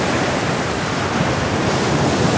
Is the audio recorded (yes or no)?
no